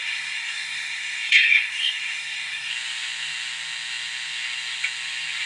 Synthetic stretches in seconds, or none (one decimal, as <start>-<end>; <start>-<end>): 0.0-2.7